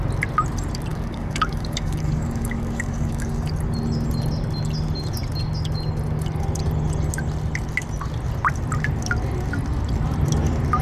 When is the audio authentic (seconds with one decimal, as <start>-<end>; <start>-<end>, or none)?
0.0-0.9; 3.5-10.8